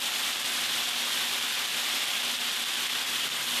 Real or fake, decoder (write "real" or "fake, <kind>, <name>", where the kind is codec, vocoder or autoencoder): real